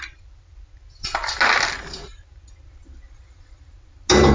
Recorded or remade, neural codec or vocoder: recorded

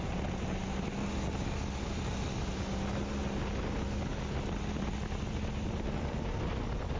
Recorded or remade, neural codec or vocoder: recorded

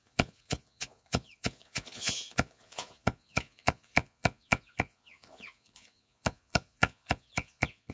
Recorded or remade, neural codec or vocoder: remade, vocoder, Vocos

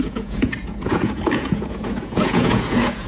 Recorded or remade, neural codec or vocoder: remade, vocoder, Vocos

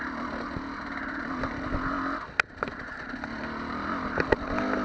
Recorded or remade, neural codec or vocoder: recorded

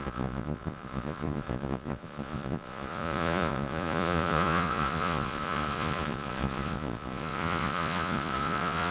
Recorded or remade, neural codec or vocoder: remade, vocoder, Vocos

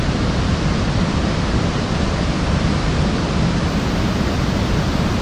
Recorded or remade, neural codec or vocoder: remade, vocoder, BigVGAN v2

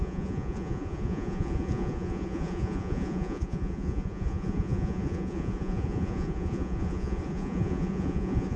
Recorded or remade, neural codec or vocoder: remade, vocoder, Vocos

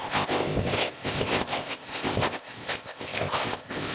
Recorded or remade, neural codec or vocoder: remade, codec, ZipCodec